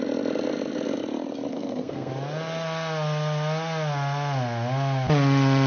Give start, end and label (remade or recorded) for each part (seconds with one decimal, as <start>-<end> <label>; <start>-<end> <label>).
0.0-1.5 recorded; 1.5-2.1 remade; 2.1-5.7 recorded